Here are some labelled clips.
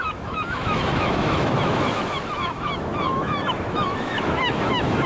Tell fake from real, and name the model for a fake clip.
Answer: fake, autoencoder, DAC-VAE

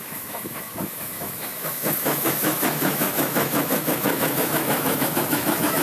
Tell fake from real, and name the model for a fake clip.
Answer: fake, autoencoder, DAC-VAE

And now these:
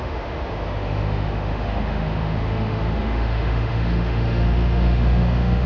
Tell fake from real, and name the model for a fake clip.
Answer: fake, autoencoder, DAC-VAE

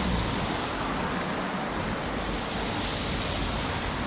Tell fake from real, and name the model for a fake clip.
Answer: real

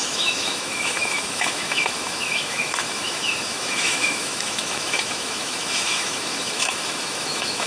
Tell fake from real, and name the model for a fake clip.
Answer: fake, autoencoder, DAC-VAE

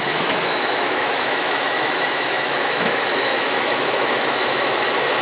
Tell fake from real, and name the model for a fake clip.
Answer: fake, autoencoder, DAC-VAE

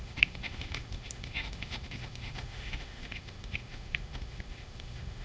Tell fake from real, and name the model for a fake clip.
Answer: fake, autoencoder, DAC-VAE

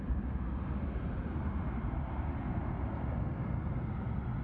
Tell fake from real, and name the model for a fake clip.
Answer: real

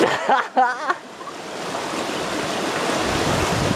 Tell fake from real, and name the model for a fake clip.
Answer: real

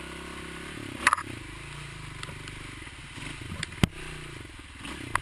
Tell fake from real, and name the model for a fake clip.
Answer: real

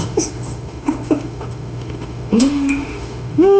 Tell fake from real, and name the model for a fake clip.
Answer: fake, autoencoder, DAC-VAE